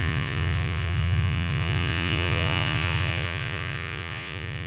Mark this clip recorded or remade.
remade